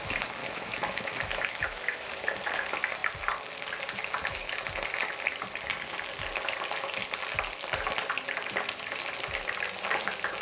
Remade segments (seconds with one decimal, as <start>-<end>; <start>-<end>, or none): 0.4-2.1